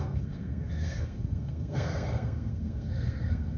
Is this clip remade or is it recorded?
remade